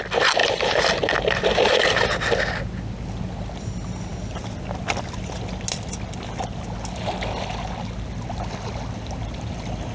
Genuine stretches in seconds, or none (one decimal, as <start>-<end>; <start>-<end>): 0.0-9.9